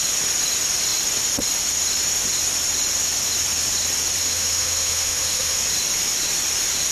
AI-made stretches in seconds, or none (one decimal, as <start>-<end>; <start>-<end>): 4.2-5.6

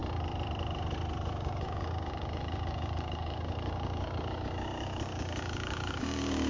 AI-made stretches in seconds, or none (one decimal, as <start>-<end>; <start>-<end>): 1.3-6.5